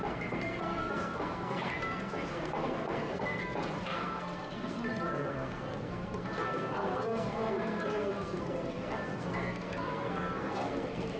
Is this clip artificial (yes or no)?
yes